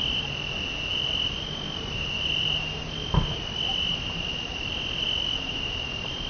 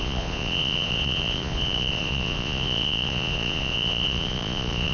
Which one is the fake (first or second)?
second